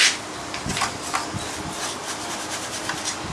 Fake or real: real